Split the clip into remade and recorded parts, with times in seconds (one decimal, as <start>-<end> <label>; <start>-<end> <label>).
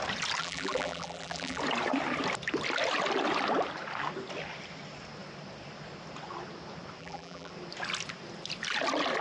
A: 0.0-0.4 recorded; 0.4-1.6 remade; 1.6-7.0 recorded; 7.0-7.5 remade; 7.5-9.2 recorded